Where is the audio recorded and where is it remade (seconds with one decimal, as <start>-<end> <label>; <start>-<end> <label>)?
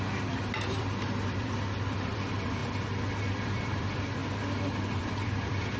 0.0-2.6 remade; 2.6-3.2 recorded; 3.2-4.2 remade; 4.2-4.9 recorded; 4.9-5.8 remade